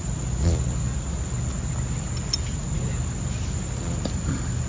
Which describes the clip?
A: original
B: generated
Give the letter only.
A